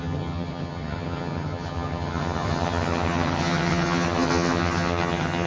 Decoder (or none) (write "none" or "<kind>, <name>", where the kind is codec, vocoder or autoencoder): vocoder, HiFi-GAN